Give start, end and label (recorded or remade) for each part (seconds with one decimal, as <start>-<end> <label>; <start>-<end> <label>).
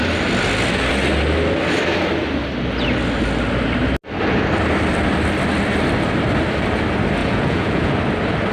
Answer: 0.0-7.2 recorded; 7.2-7.9 remade; 7.9-8.5 recorded